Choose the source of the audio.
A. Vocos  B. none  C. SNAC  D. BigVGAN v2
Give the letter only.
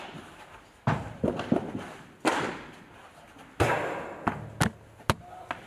B